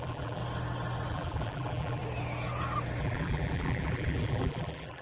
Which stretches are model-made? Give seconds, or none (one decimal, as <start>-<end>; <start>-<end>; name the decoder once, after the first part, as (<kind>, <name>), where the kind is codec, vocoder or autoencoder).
0.0-0.4 (vocoder, BigVGAN v2); 1.1-2.0; 3.0-5.0